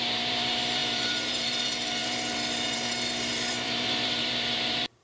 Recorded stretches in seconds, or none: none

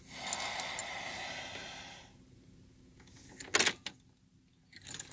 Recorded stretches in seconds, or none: 0.0-5.1

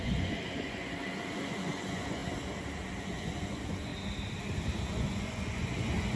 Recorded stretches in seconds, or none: 2.2-3.0; 3.9-4.9

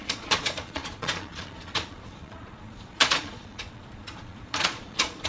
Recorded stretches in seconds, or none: none

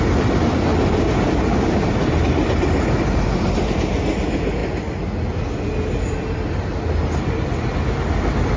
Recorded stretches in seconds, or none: 0.0-0.7; 1.4-8.6